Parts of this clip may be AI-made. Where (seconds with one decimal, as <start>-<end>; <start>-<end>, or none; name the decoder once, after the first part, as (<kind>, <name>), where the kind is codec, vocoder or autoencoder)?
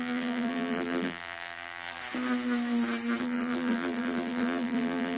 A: 0.0-2.0 (vocoder, BigVGAN v2); 3.2-5.2